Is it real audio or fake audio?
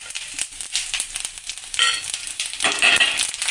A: real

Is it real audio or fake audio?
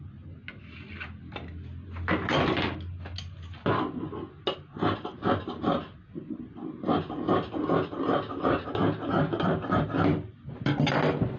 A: real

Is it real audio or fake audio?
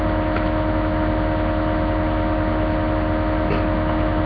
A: real